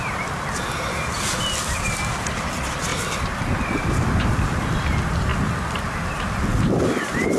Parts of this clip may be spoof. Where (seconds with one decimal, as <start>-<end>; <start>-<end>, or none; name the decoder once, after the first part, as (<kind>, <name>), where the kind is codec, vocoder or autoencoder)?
0.0-5.3 (vocoder, BigVGAN v2); 6.4-7.4